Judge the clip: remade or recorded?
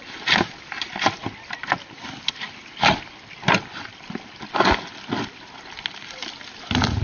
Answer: recorded